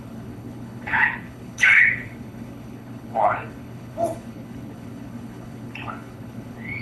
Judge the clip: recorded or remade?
remade